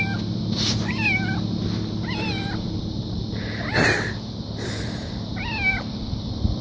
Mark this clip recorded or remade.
recorded